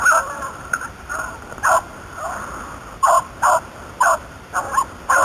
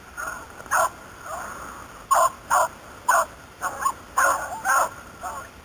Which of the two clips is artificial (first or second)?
first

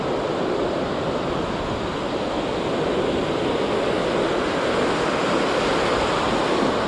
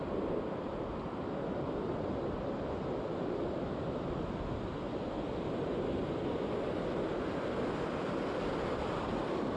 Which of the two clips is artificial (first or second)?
second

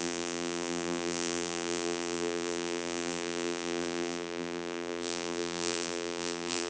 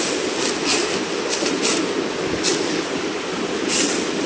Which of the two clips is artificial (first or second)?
first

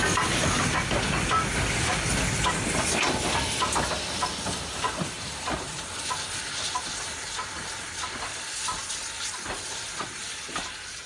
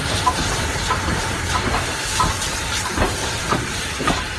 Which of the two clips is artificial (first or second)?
second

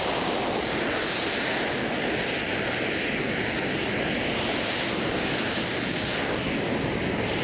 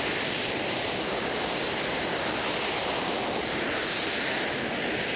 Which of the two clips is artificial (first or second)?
second